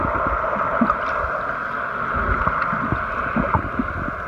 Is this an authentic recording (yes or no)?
yes